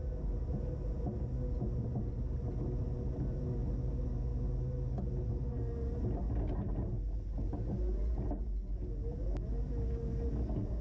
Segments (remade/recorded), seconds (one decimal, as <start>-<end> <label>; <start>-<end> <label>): 0.0-10.8 recorded